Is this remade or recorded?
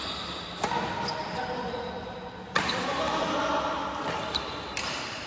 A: recorded